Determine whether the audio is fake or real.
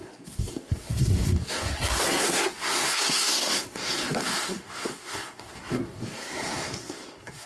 fake